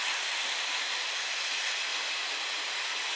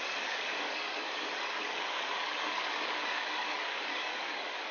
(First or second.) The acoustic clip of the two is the first